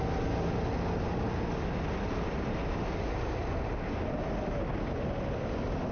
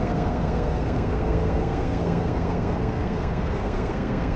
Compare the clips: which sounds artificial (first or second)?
second